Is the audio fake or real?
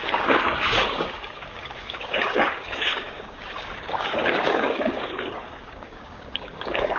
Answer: fake